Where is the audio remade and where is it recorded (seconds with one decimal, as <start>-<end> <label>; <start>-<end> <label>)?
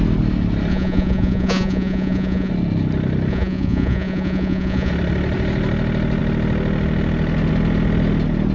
0.0-0.7 recorded; 0.7-2.5 remade; 2.5-3.3 recorded; 3.3-4.9 remade; 4.9-8.5 recorded